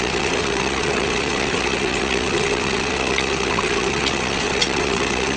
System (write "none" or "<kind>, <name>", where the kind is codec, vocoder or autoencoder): vocoder, WaveNeXt